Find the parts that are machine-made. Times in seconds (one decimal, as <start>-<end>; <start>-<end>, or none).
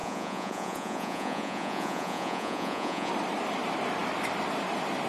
0.0-3.1